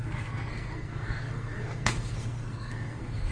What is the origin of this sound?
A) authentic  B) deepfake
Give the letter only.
B